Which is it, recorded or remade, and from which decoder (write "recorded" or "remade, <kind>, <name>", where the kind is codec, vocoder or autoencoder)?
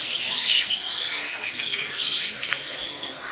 remade, codec, SNAC